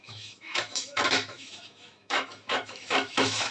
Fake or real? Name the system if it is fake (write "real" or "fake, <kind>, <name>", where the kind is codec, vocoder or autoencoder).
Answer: fake, autoencoder, DAC-VAE